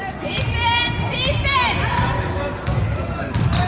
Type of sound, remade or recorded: recorded